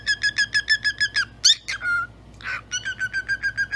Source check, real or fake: real